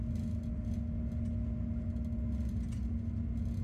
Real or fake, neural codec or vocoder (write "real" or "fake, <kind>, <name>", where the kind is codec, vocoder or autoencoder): real